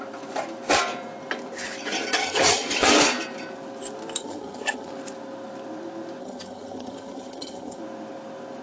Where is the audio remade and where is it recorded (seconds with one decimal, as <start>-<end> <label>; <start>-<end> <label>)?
0.0-2.2 recorded; 2.2-2.9 remade; 2.9-4.2 recorded; 4.2-4.9 remade; 4.9-6.2 recorded; 6.2-7.8 remade; 7.8-8.6 recorded